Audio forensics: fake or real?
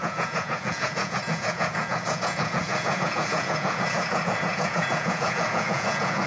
fake